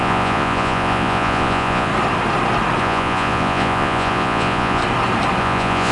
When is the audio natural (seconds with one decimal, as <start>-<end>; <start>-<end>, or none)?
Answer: 1.9-2.8; 4.8-5.4